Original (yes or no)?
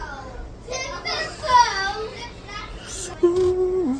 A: yes